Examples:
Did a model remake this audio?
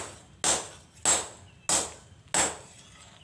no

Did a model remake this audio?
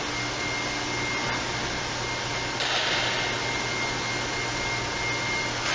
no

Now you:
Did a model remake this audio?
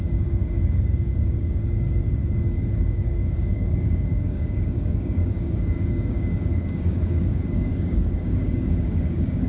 yes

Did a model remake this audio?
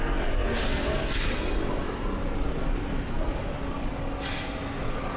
no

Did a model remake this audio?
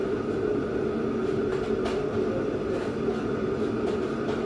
no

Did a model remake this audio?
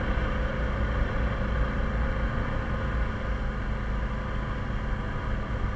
no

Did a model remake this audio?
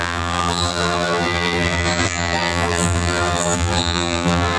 yes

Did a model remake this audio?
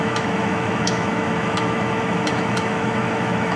yes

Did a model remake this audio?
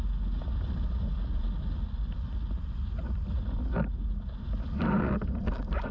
no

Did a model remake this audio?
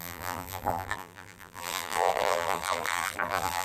yes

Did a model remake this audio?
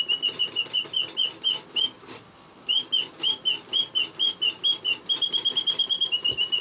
no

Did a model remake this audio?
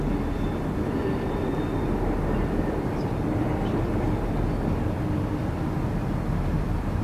no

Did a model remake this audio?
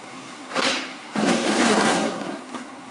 yes